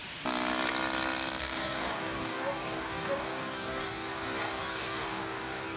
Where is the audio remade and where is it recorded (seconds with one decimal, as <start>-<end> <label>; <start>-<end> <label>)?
0.0-1.4 recorded; 1.4-5.8 remade